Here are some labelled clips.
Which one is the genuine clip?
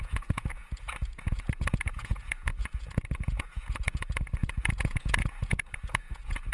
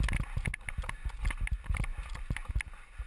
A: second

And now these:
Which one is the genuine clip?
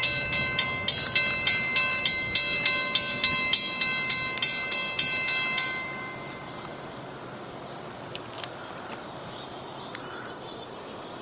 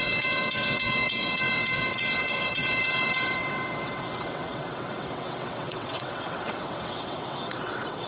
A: first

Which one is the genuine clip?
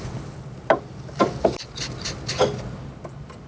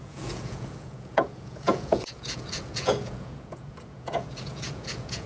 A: first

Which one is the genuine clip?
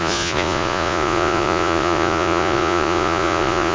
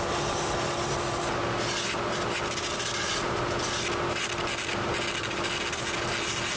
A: second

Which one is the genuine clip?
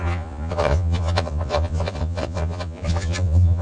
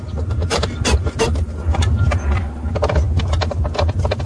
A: second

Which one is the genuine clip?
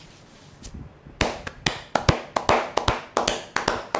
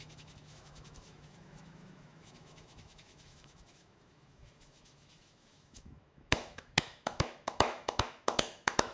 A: first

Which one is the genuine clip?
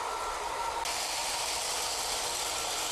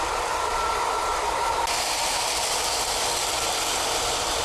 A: first